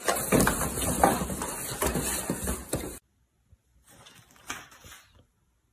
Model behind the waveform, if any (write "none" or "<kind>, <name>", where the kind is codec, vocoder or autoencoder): none